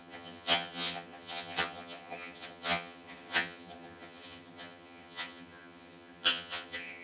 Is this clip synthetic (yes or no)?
yes